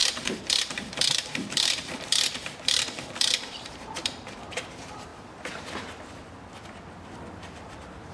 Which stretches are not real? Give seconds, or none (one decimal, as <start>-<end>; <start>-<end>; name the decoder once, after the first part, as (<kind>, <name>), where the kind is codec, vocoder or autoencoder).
0.0-5.1 (vocoder, BigVGAN v2); 7.4-8.1